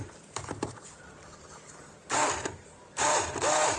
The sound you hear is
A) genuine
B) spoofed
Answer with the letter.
B